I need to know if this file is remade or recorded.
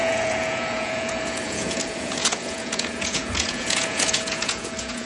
remade